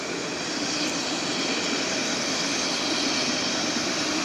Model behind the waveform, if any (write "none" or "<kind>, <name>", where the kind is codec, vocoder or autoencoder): none